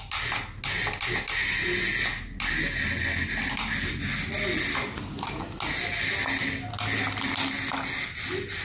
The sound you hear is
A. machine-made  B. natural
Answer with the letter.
B